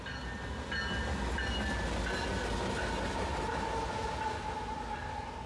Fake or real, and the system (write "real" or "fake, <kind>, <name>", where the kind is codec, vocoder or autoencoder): real